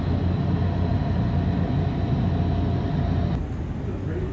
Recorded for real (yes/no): yes